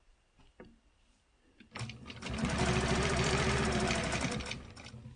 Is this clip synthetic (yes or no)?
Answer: no